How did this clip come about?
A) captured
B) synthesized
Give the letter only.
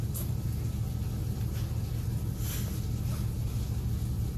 A